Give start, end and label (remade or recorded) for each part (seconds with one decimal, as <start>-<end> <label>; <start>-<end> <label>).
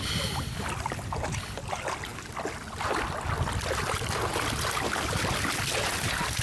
0.0-6.4 recorded